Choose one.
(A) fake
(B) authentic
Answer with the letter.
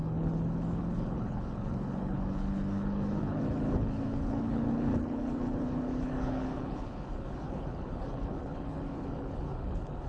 A